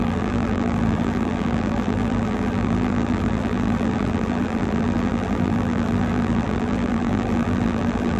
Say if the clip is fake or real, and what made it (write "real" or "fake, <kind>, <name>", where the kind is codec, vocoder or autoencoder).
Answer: fake, vocoder, BigVGAN v2